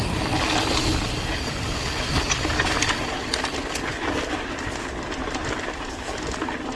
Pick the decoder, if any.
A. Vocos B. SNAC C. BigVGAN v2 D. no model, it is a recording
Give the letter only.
D